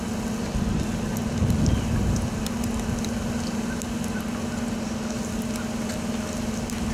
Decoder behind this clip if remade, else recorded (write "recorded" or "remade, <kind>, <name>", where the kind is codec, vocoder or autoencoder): recorded